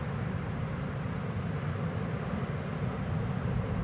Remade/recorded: recorded